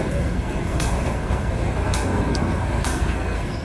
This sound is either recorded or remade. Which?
remade